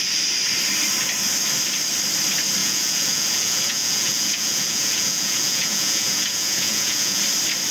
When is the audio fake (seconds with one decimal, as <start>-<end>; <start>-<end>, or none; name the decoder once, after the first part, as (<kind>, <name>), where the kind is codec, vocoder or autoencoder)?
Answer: 2.6-7.2 (vocoder, Vocos)